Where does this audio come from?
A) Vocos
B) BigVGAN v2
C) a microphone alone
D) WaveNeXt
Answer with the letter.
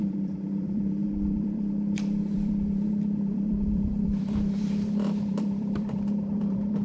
B